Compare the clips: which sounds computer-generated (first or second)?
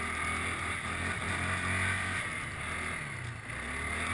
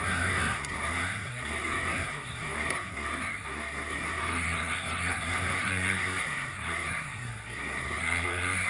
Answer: second